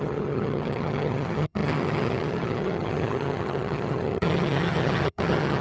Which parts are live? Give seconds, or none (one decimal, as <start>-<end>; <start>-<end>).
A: none